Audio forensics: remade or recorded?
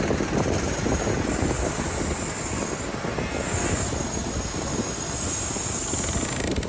recorded